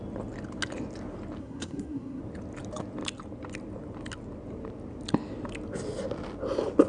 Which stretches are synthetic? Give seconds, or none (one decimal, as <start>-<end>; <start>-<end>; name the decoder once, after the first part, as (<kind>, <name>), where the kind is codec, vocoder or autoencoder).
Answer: 1.4-2.2 (codec, SNAC)